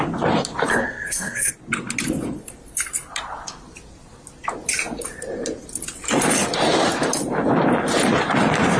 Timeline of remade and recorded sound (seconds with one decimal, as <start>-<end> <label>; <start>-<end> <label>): 0.0-0.7 recorded; 0.7-1.5 remade; 1.5-8.8 recorded